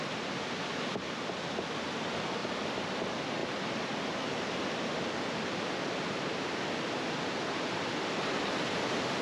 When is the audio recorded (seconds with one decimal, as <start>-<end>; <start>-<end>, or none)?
0.0-2.4; 3.0-9.2